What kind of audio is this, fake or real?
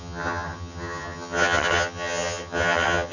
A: fake